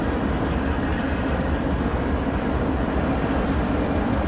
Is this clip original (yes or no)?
yes